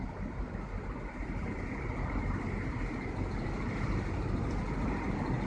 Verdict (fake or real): real